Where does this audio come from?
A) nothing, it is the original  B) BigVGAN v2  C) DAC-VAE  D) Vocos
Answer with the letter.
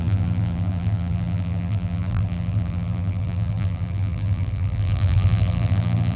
B